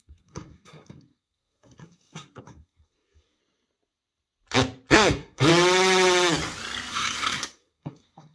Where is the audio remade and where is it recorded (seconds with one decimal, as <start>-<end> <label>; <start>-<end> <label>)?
0.0-3.4 remade; 3.4-4.9 recorded; 4.9-5.5 remade; 5.5-6.9 recorded; 6.9-8.3 remade